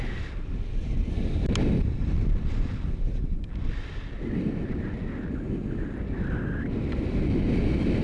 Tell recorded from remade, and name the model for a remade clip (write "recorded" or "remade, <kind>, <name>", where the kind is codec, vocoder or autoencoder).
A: recorded